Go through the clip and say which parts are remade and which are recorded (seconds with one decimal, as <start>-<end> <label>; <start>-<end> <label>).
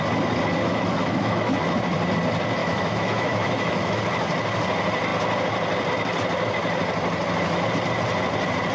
0.0-0.6 recorded; 0.6-1.8 remade; 1.8-2.6 recorded; 2.6-4.0 remade; 4.0-8.7 recorded